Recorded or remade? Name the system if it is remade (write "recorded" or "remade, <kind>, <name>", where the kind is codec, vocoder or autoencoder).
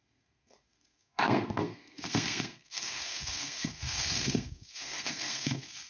remade, codec, SNAC